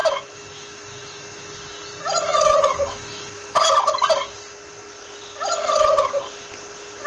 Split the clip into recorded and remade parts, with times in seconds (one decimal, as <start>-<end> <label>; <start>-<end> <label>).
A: 0.0-1.5 remade; 1.5-2.3 recorded; 2.3-3.7 remade; 3.7-7.1 recorded